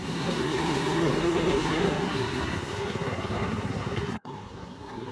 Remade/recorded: remade